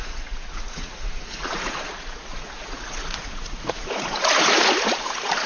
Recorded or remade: remade